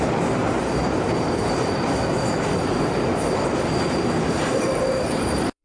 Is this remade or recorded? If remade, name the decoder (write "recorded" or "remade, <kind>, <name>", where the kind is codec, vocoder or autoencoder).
remade, vocoder, BigVGAN v2